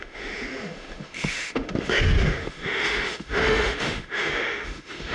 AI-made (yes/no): yes